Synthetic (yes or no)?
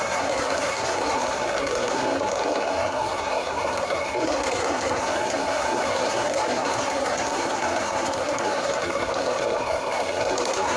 yes